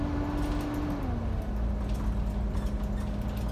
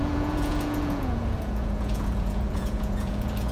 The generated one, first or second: second